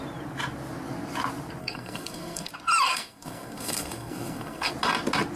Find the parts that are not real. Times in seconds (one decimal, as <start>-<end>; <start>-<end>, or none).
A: 1.6-2.5; 2.9-4.7